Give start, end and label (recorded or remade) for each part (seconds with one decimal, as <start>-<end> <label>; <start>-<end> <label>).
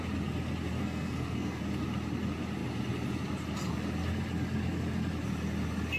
0.0-0.8 recorded; 0.8-1.6 remade; 1.6-6.0 recorded